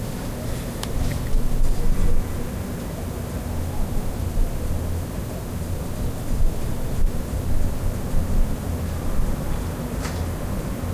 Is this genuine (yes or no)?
yes